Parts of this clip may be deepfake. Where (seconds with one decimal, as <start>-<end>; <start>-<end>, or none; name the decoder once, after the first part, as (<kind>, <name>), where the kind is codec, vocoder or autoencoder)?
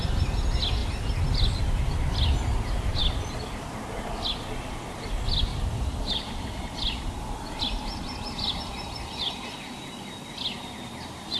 5.5-6.4 (vocoder, BigVGAN v2)